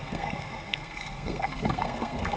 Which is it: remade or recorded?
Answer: remade